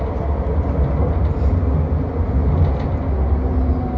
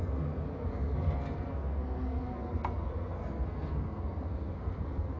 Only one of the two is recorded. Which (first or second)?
first